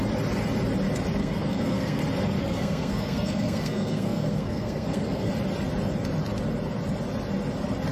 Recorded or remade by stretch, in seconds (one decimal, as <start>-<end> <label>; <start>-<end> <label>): 0.0-1.2 recorded; 1.2-2.0 remade; 2.0-2.4 recorded; 2.4-5.3 remade; 5.3-7.9 recorded